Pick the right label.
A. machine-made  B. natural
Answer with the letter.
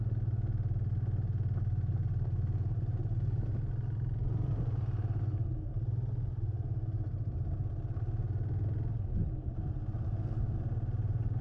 B